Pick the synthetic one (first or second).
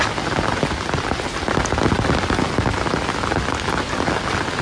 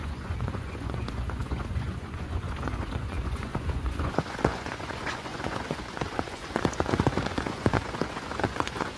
second